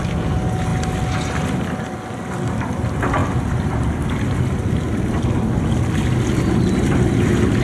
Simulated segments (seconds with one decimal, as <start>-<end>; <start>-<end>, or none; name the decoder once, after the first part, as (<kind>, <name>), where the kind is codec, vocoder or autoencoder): none